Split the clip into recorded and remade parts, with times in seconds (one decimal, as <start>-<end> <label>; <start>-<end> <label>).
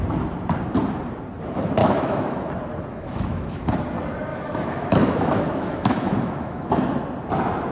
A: 0.0-1.8 recorded; 1.8-2.5 remade; 2.5-2.9 recorded; 2.9-3.7 remade; 3.7-4.3 recorded; 4.3-7.0 remade; 7.0-7.7 recorded